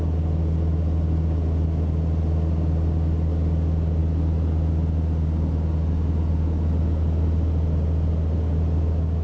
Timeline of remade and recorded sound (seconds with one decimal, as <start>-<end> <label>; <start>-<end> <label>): 0.0-9.2 recorded